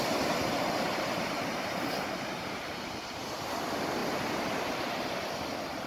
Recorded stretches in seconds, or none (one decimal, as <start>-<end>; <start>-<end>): 0.0-0.4; 3.6-5.9